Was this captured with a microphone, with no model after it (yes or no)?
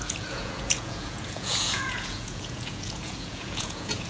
no